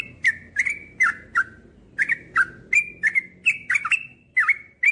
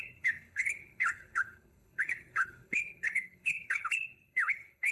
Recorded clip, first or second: first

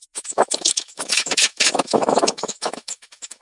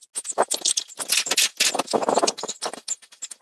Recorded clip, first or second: second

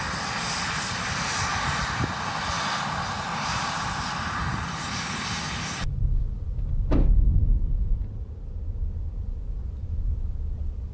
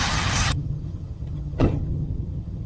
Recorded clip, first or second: first